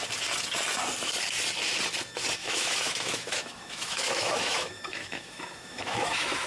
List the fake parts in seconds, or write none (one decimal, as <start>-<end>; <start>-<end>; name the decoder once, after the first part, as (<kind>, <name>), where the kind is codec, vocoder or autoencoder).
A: 2.4-6.5 (autoencoder, DAC-VAE)